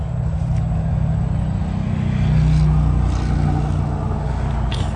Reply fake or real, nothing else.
real